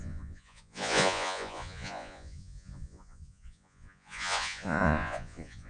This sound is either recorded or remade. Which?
remade